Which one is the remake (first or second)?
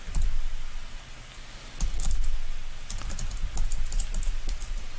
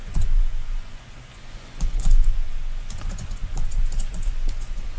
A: second